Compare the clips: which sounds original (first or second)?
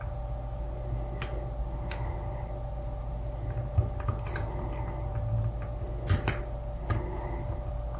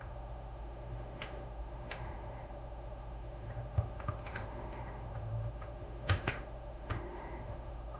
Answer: first